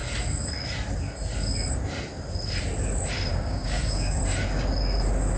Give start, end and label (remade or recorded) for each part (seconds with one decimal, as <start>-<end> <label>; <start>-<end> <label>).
0.0-3.3 recorded; 3.3-4.2 remade; 4.2-5.4 recorded